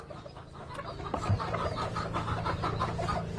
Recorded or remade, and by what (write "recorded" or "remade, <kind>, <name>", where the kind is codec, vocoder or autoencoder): recorded